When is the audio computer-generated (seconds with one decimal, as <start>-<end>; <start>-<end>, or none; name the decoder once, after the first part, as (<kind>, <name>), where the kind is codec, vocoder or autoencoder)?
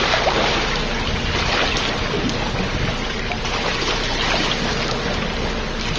2.0-2.5 (vocoder, BigVGAN v2); 3.0-4.6